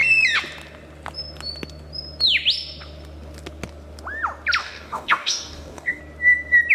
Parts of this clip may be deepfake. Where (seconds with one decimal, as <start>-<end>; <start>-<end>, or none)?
4.6-6.0